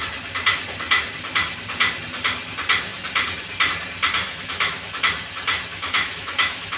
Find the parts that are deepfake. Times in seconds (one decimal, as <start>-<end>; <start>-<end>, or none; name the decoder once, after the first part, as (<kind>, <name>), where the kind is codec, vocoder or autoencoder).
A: 4.2-5.0 (autoencoder, DAC-VAE); 5.7-6.8